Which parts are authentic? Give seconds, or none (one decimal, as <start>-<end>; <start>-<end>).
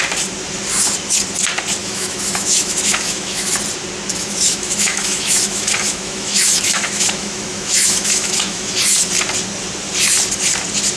0.0-1.8; 3.5-4.1; 8.8-11.0